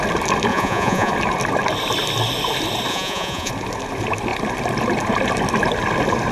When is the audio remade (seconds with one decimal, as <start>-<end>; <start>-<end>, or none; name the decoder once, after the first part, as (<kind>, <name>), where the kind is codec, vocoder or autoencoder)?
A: 0.5-1.1 (vocoder, Vocos); 2.9-3.5